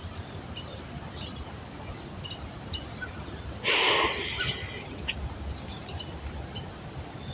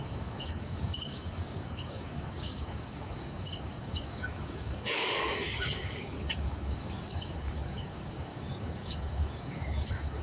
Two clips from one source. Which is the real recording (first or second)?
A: first